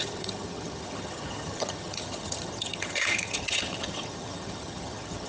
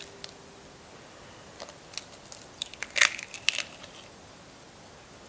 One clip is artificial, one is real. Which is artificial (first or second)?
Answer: first